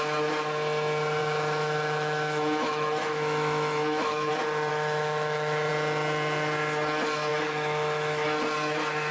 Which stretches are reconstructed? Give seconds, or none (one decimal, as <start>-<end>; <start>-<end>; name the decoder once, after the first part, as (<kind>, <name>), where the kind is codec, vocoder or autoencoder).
1.2-4.3 (autoencoder, DAC-VAE); 4.7-5.7; 7.3-8.4

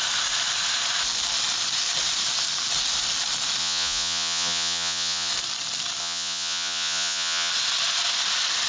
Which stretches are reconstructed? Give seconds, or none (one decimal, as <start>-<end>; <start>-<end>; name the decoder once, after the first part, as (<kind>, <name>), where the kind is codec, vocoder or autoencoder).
3.6-5.3 (vocoder, Vocos); 6.0-7.5